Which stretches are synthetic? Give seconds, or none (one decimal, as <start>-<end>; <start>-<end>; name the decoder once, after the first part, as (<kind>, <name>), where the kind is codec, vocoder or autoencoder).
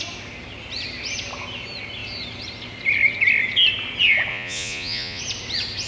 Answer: 4.3-5.2 (vocoder, Vocos)